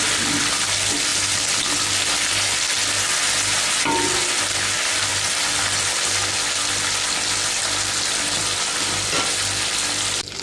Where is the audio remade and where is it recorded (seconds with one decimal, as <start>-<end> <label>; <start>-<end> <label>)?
0.0-10.4 recorded